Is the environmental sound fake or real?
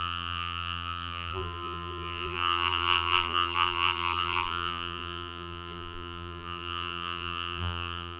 fake